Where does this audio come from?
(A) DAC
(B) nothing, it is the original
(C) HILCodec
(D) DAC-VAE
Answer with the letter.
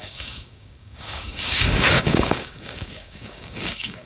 A